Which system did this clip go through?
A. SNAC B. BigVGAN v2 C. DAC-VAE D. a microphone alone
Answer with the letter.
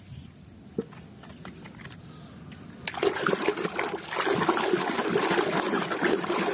D